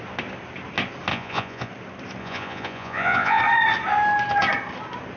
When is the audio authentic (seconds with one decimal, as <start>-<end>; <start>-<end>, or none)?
0.0-1.1; 1.7-2.2; 3.4-5.2